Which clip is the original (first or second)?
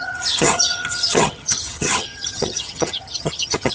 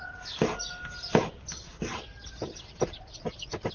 second